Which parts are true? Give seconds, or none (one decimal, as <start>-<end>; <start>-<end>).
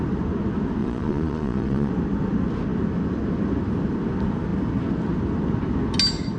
0.0-0.8; 1.9-6.4